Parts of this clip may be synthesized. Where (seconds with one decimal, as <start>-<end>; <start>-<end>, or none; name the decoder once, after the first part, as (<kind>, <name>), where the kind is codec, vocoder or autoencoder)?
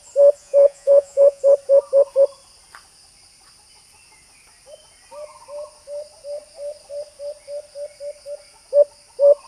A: 0.4-1.4 (vocoder, Vocos)